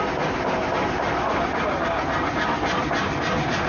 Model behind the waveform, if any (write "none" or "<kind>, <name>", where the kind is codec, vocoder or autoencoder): none